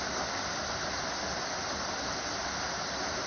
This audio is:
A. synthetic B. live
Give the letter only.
B